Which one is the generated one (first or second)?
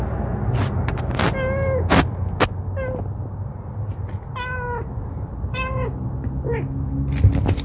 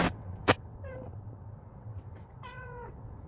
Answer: second